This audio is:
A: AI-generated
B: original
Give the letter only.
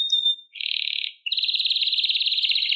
B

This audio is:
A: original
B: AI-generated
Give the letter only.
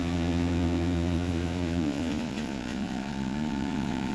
B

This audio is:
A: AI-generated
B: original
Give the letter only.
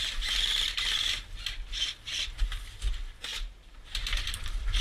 B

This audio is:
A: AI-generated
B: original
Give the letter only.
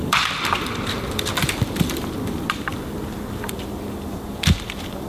A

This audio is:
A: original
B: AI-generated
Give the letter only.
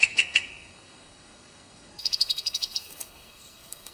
B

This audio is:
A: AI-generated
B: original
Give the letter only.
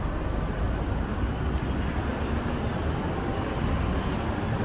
B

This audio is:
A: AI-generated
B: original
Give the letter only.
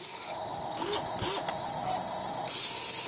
B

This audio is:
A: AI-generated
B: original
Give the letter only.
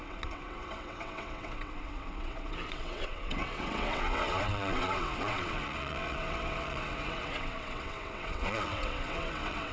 A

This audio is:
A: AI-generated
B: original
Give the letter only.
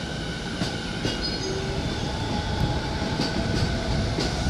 B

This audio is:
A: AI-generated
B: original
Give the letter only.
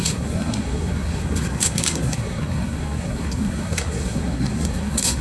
A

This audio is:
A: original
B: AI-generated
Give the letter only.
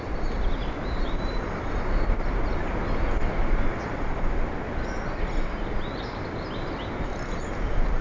A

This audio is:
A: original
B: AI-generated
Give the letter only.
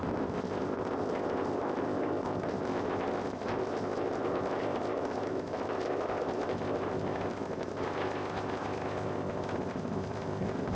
B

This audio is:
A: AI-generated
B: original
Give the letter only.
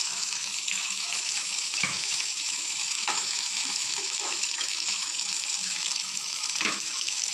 A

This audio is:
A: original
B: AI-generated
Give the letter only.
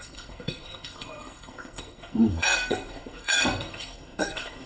B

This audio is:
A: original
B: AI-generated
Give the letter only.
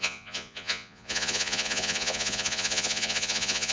B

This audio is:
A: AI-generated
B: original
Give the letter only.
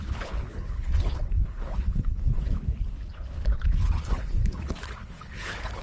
A